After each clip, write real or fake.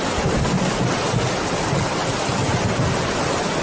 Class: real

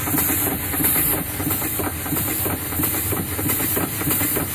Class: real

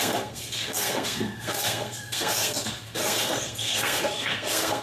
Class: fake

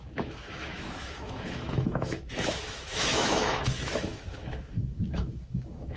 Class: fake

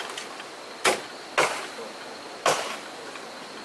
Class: real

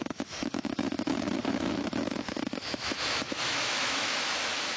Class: fake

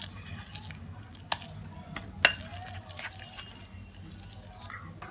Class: real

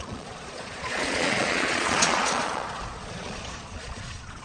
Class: fake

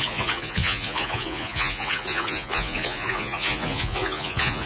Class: fake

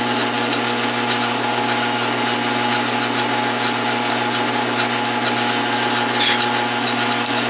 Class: real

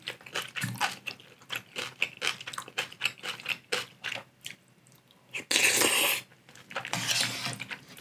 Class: real